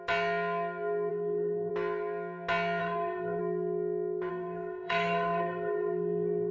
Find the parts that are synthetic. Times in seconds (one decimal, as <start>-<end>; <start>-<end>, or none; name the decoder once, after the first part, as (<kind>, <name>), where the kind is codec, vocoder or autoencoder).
1.1-1.7 (codec, SNAC); 2.8-3.4; 4.3-6.5